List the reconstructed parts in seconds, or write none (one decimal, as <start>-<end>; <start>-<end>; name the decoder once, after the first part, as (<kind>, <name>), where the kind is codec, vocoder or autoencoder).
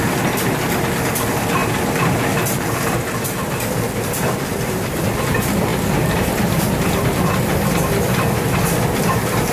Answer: 0.0-9.5 (vocoder, BigVGAN v2)